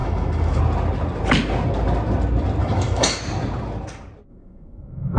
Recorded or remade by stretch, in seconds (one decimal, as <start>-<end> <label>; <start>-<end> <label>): 0.0-0.6 remade; 0.6-2.6 recorded; 2.6-3.2 remade; 3.2-4.3 recorded; 4.3-5.2 remade